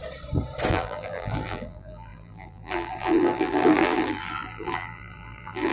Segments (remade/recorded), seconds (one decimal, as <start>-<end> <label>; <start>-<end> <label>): 0.0-0.7 recorded; 0.7-5.7 remade